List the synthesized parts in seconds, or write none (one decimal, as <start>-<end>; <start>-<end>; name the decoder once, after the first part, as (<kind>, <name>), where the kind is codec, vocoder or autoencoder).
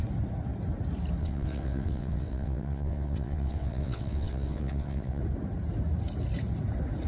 1.2-5.2 (vocoder, WaveNeXt)